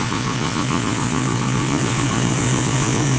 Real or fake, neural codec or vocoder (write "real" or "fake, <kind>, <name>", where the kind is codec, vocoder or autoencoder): fake, vocoder, Vocos